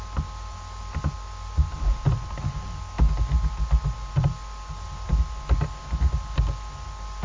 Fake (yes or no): no